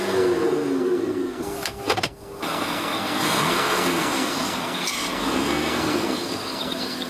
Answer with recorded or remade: remade